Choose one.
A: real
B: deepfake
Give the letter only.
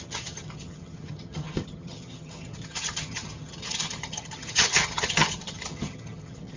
B